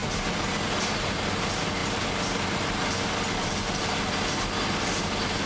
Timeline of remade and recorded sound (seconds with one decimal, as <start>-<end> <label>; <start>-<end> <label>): 0.0-5.5 recorded